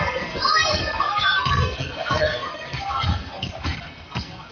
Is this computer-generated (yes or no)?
yes